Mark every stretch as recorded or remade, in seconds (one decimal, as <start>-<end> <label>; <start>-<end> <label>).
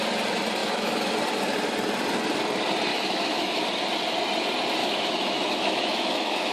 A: 0.0-0.6 recorded; 0.6-1.1 remade; 1.1-2.9 recorded; 2.9-3.6 remade; 3.6-4.8 recorded; 4.8-6.5 remade